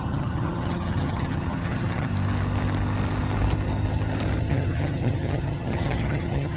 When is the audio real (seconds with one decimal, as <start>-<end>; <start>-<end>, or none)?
2.1-4.5